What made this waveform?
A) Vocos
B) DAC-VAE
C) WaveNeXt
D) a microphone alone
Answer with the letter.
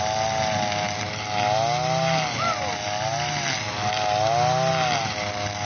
D